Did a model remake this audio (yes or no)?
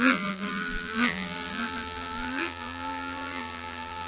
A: yes